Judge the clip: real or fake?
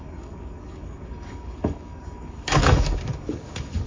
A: fake